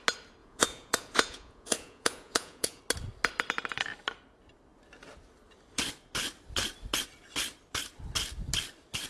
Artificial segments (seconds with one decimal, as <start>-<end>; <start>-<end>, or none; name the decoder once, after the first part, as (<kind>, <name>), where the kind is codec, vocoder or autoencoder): 0.4-2.8 (vocoder, Vocos)